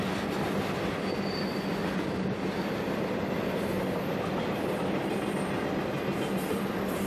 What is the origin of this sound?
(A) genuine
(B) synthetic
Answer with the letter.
A